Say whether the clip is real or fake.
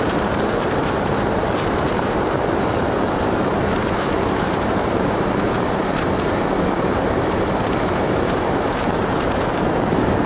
fake